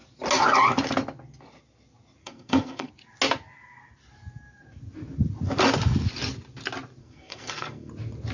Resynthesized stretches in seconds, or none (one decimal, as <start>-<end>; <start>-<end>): 2.2-2.9; 7.0-7.9